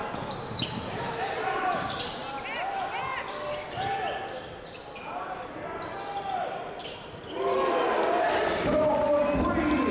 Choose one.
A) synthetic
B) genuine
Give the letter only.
B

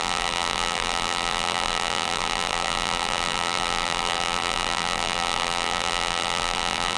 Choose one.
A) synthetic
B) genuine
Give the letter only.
A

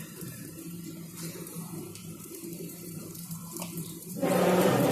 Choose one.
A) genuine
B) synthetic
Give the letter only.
B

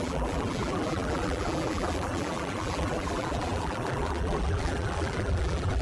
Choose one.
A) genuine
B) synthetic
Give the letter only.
B